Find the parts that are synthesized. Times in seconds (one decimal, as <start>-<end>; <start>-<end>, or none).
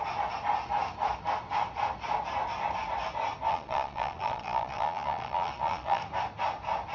3.5-6.0